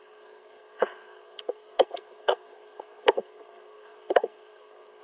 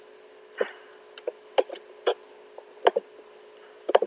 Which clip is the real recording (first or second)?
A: second